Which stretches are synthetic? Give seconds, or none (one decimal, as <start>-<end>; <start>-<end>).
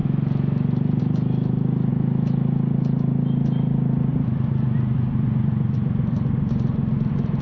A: none